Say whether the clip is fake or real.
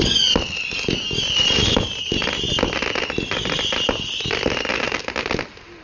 real